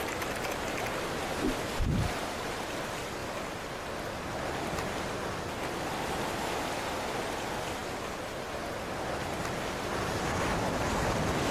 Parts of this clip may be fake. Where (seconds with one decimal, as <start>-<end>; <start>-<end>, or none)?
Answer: none

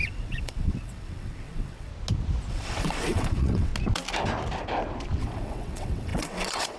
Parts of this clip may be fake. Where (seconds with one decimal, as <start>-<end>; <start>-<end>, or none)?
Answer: 0.0-1.9; 2.5-3.7; 5.2-6.8

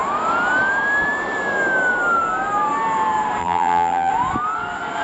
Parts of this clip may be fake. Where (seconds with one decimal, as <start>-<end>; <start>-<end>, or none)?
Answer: 3.4-4.1

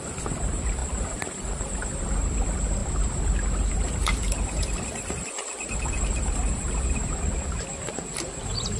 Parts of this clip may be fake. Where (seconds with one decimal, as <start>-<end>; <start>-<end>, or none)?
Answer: none

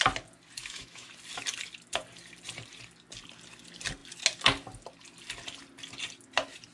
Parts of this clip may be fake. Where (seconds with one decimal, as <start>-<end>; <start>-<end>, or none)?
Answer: 0.6-1.1

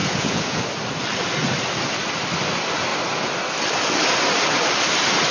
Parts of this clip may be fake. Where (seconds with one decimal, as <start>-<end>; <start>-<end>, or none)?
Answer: 0.0-0.6

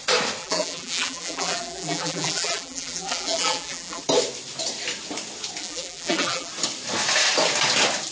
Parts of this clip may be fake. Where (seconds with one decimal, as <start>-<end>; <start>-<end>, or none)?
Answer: 0.4-4.0; 5.6-6.5

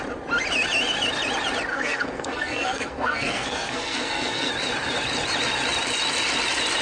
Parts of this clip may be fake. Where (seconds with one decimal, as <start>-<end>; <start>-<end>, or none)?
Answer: 1.7-4.5